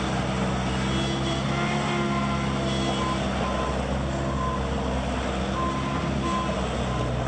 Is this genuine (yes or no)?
yes